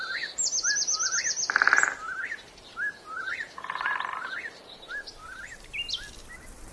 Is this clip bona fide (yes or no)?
yes